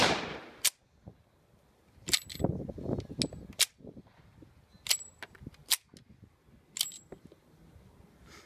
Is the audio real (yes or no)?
yes